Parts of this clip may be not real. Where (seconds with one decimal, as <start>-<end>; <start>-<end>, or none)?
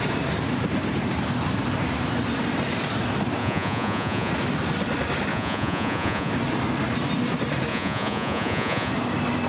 3.4-4.3; 5.3-6.3; 7.7-8.9